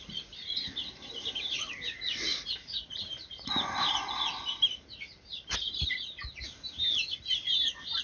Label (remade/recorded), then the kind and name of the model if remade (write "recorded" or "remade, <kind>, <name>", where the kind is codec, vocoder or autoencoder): remade, vocoder, BigVGAN v2